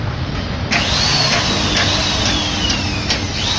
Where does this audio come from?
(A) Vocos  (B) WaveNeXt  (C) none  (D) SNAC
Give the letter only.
C